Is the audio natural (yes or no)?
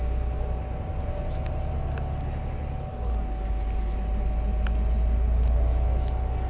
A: yes